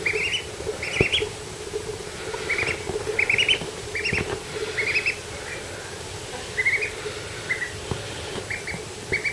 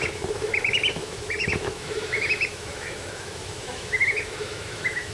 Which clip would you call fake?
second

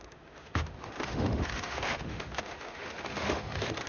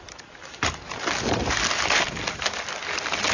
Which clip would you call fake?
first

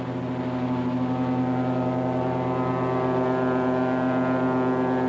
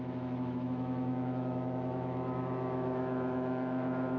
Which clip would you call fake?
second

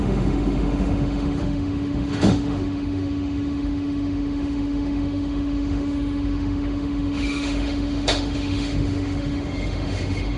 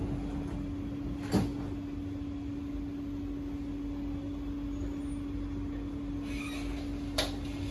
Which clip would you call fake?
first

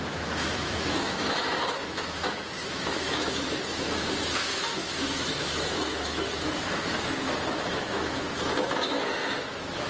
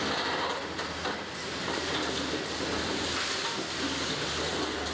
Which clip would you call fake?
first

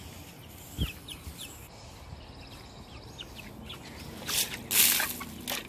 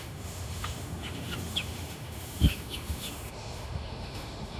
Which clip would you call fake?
second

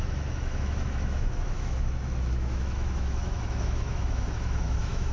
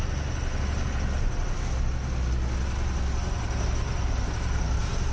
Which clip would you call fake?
first